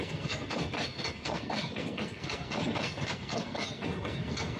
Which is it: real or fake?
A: fake